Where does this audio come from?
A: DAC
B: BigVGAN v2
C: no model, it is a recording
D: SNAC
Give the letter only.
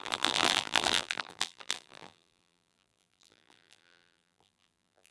B